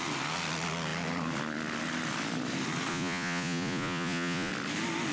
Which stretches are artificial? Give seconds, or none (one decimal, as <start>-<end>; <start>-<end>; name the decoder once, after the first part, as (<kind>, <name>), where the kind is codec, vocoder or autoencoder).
2.9-4.5 (vocoder, Vocos)